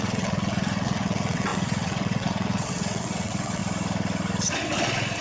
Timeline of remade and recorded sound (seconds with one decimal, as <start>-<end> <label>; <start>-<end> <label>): 0.0-3.6 remade; 3.6-5.2 recorded